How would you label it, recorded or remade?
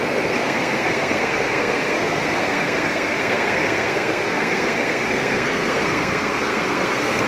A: remade